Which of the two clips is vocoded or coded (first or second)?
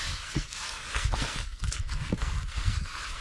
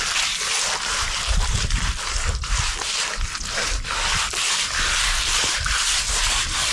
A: first